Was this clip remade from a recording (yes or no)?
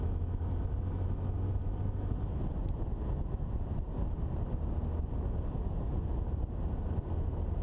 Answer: no